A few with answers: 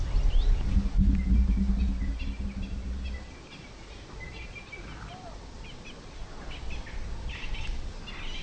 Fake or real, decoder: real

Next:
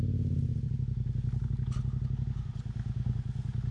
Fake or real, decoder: real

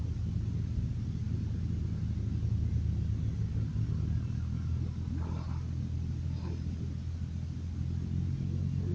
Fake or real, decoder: real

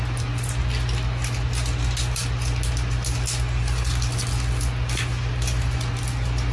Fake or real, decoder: real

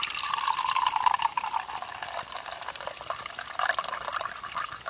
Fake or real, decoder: real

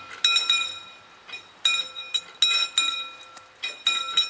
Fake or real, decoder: real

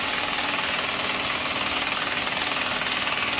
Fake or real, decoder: real